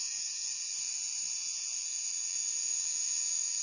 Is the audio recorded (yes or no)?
no